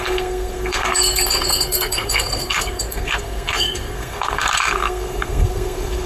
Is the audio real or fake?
fake